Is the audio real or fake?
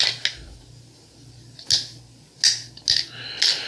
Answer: real